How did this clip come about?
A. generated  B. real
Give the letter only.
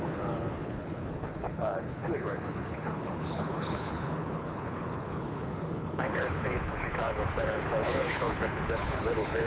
A